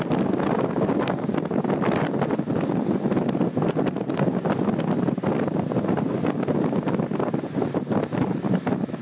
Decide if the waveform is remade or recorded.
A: recorded